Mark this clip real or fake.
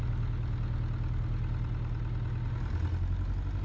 real